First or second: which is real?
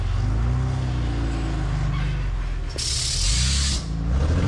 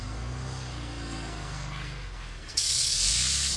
first